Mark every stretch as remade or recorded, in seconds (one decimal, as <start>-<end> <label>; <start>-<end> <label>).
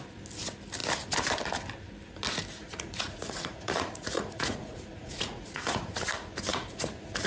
0.0-2.6 recorded; 2.6-6.1 remade; 6.1-6.5 recorded; 6.5-7.3 remade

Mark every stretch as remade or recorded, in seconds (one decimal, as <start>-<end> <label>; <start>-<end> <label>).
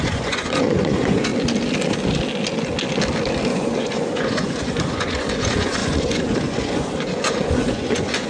0.0-1.3 remade; 1.3-3.5 recorded; 3.5-8.3 remade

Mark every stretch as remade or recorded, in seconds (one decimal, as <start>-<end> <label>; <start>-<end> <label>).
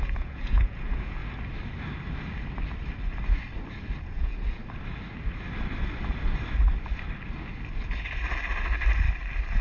0.0-1.2 remade; 1.2-4.0 recorded; 4.0-4.6 remade; 4.6-9.6 recorded